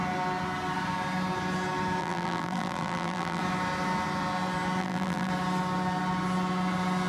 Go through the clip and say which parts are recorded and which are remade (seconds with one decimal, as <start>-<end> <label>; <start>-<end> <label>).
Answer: 0.0-2.0 recorded; 2.0-3.4 remade; 3.4-4.8 recorded; 4.8-5.3 remade; 5.3-7.1 recorded